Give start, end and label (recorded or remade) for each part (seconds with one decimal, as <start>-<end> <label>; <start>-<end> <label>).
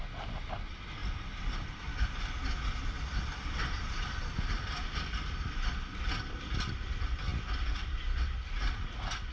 0.0-9.3 recorded